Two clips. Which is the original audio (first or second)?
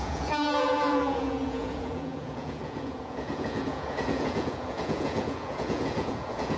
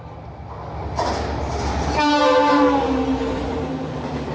second